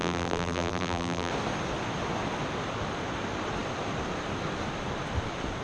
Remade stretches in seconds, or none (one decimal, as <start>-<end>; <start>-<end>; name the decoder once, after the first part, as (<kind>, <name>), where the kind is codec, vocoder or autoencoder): 0.0-1.3 (vocoder, BigVGAN v2)